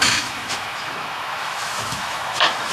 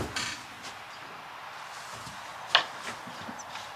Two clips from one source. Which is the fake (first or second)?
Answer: first